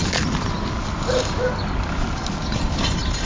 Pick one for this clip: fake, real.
real